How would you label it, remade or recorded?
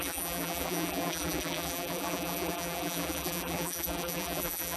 remade